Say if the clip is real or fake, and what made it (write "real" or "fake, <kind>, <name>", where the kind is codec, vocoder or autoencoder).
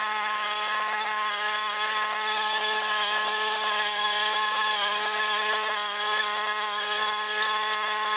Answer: real